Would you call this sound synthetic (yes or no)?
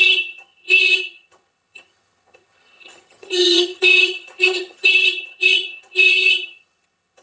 yes